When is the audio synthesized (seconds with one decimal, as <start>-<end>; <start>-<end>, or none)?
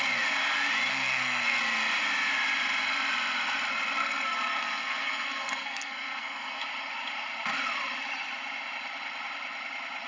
0.9-1.6; 4.0-6.6